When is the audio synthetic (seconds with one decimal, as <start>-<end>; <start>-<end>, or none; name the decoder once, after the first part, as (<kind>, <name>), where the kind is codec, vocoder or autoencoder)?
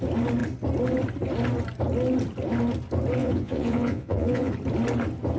3.2-4.5 (vocoder, Vocos)